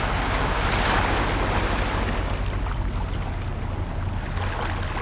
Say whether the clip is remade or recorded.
recorded